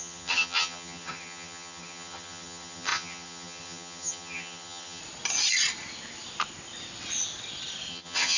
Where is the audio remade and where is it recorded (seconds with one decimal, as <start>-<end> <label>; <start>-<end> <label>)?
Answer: 0.0-5.0 remade; 5.0-7.9 recorded; 7.9-8.4 remade